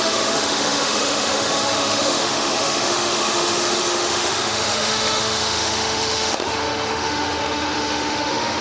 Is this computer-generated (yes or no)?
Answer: yes